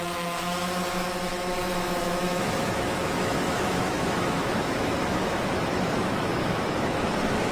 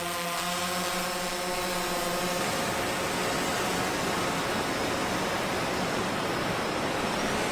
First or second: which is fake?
first